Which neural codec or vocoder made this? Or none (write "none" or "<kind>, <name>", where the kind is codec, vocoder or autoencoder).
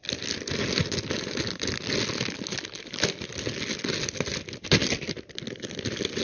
none